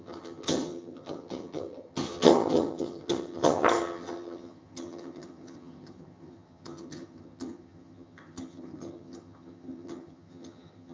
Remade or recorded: remade